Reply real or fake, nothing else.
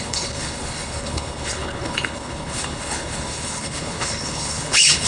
fake